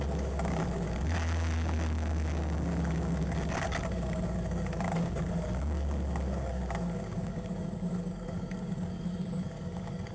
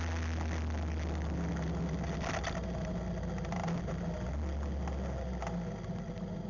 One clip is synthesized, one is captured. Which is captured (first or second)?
second